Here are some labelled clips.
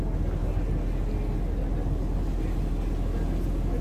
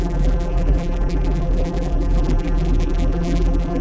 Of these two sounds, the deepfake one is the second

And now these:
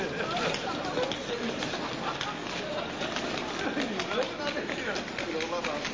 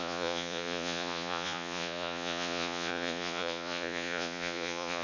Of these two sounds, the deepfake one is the second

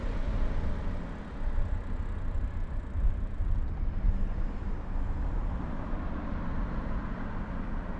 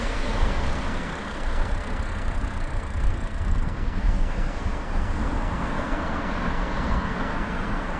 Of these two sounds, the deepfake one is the second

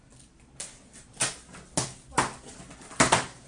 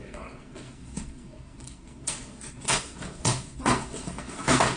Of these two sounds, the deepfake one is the second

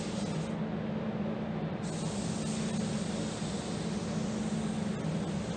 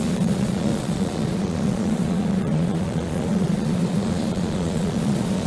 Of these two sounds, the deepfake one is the second